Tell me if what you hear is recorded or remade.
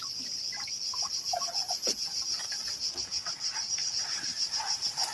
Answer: recorded